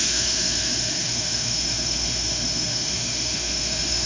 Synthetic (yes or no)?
yes